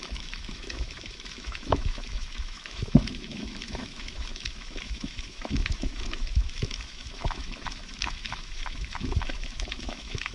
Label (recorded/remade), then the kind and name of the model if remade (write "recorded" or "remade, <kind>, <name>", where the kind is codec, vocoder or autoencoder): remade, autoencoder, DAC-VAE